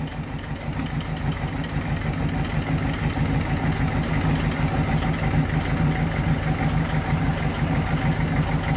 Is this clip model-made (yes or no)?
no